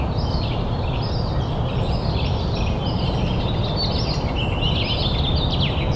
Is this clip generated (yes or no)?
no